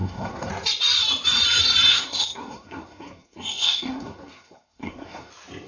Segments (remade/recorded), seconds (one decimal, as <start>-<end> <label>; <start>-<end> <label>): 0.0-0.5 remade; 0.5-1.9 recorded; 1.9-5.3 remade; 5.3-5.7 recorded

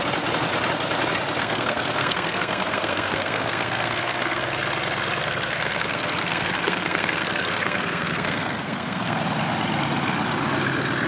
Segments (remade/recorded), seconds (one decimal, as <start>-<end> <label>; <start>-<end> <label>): 0.0-1.4 recorded; 1.4-4.6 remade; 4.6-5.2 recorded; 5.2-9.2 remade; 9.2-11.1 recorded

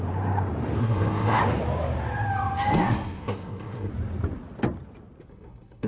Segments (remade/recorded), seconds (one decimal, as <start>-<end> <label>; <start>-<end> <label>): 0.0-0.8 recorded; 0.8-1.4 remade; 1.4-2.8 recorded; 2.8-3.9 remade; 3.9-5.3 recorded; 5.3-5.9 remade

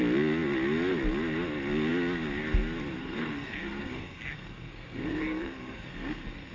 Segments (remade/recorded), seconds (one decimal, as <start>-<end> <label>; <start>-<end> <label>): 0.0-3.0 recorded; 3.0-6.5 remade

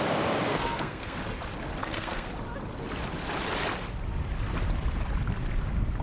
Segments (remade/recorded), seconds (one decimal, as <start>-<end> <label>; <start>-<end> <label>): 0.0-0.5 recorded; 0.5-1.2 remade; 1.2-1.8 recorded; 1.8-2.3 remade; 2.3-6.0 recorded

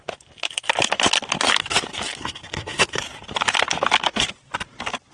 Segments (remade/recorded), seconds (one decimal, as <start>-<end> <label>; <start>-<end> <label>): 0.0-2.2 recorded; 2.2-3.0 remade; 3.0-5.1 recorded

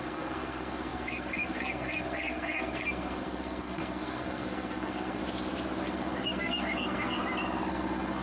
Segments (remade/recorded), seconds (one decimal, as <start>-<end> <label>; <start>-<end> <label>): 0.0-5.2 remade; 5.2-5.8 recorded; 5.8-7.2 remade; 7.2-7.7 recorded; 7.7-8.2 remade

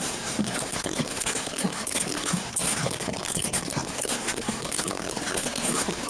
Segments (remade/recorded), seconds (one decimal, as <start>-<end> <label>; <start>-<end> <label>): 0.0-6.1 remade